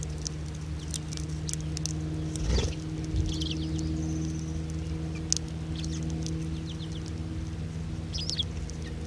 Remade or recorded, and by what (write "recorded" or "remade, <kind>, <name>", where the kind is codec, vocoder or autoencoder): recorded